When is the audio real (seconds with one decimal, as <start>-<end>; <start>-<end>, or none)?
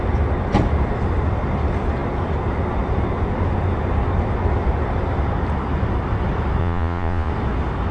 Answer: 0.0-6.6; 7.3-7.9